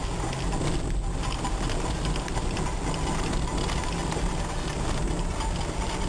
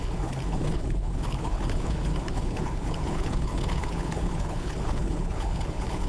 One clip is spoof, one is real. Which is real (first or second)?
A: first